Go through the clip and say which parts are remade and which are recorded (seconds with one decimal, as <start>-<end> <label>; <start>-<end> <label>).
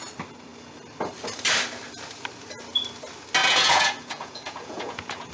0.0-3.4 recorded; 3.4-5.3 remade